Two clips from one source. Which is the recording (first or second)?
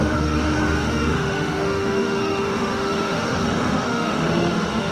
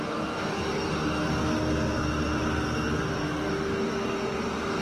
second